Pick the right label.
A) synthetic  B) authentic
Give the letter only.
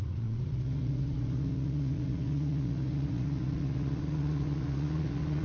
A